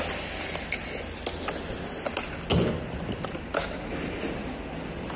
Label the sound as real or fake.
real